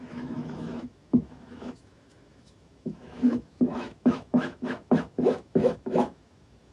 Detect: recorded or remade remade